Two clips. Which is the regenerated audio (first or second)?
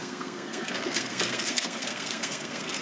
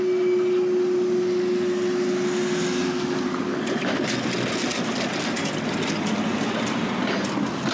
first